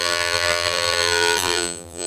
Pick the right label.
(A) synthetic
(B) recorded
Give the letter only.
A